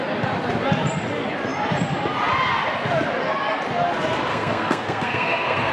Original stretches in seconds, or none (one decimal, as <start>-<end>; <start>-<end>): 0.0-4.3